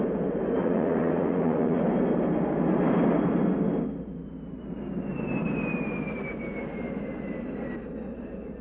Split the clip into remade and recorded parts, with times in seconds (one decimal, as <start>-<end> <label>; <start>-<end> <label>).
0.0-0.6 recorded; 0.6-1.8 remade; 1.8-8.6 recorded